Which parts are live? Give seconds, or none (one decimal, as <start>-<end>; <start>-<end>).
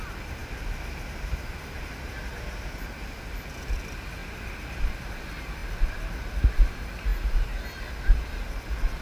0.0-0.4; 2.2-4.2; 5.1-9.0